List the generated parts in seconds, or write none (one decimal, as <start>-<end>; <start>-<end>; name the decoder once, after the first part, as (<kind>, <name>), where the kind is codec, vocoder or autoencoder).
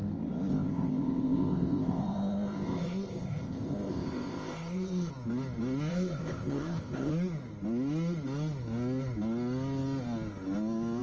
0.5-5.1 (codec, ZipCodec); 5.9-7.1